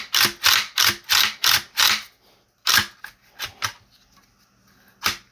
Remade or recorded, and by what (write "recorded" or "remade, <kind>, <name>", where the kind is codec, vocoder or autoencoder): recorded